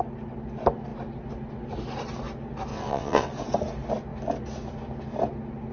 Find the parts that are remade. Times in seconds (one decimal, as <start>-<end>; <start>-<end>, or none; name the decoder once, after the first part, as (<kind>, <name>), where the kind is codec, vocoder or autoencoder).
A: 2.7-3.3 (vocoder, WaveNeXt)

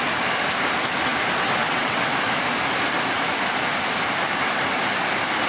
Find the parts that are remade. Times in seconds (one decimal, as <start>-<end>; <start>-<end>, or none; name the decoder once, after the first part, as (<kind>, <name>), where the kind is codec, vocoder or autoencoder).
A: 1.6-2.1 (vocoder, WaveNeXt)

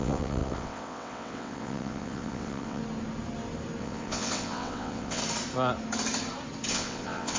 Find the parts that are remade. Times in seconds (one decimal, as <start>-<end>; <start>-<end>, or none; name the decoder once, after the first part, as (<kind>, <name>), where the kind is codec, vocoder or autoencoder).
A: 0.0-2.8 (vocoder, WaveNeXt); 3.8-5.2; 6.7-7.4

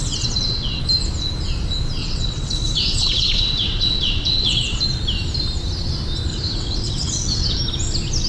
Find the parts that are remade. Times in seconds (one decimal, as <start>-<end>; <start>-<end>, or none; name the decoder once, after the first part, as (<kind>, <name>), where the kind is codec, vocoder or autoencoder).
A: 0.0-0.8 (vocoder, WaveNeXt); 2.0-4.8; 6.3-7.6

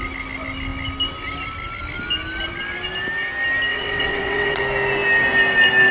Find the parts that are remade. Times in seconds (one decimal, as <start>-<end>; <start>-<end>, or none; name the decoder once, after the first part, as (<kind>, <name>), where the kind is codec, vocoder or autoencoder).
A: 3.7-4.6 (vocoder, WaveNeXt)

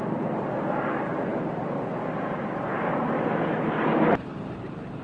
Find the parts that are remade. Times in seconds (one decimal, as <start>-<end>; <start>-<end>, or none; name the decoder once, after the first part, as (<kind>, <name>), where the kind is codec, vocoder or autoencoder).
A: none

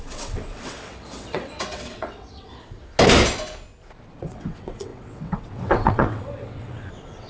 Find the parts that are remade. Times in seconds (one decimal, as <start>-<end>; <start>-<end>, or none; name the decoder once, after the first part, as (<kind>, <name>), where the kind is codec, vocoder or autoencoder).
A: 0.0-2.5 (vocoder, WaveNeXt); 4.2-7.3

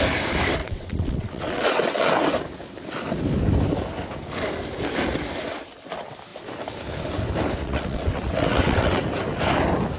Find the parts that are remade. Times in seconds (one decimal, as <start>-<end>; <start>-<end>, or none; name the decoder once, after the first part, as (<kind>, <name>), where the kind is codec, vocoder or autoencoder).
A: 0.6-2.1 (vocoder, WaveNeXt); 7.6-9.0